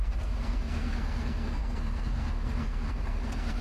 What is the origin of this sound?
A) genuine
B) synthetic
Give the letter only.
B